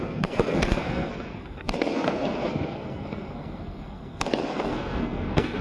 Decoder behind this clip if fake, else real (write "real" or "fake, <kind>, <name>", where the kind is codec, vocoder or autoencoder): fake, codec, SNAC